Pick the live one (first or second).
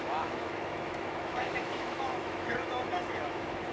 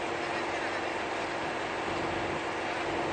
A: second